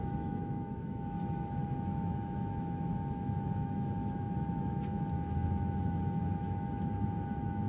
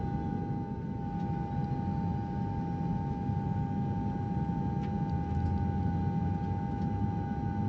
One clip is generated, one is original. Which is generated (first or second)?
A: first